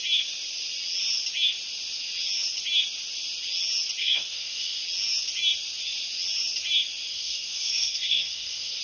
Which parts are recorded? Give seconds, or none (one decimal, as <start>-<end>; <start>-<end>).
0.0-4.0; 4.8-7.1